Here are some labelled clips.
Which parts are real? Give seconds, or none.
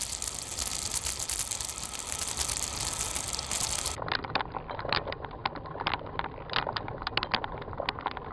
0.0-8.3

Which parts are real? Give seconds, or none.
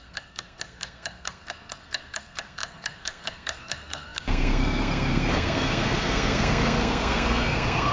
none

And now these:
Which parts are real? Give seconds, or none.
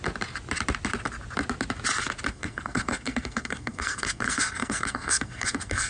0.0-2.3